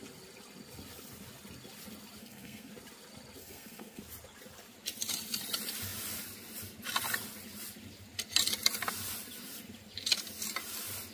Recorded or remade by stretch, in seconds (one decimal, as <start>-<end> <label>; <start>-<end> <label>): 0.0-2.2 recorded; 2.2-2.7 remade; 2.7-3.4 recorded; 3.4-4.0 remade; 4.0-11.1 recorded